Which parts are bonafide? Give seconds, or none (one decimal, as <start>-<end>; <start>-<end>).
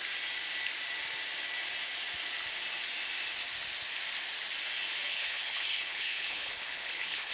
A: 0.0-5.1